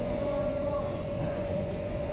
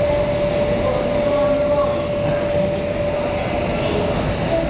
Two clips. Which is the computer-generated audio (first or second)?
first